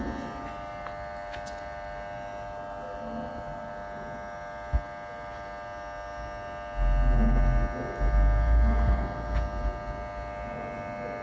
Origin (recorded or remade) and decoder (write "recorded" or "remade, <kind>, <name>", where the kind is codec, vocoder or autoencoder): recorded